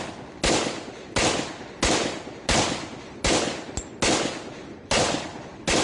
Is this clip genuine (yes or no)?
yes